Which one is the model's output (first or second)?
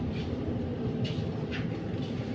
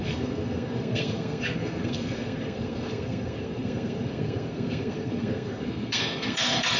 second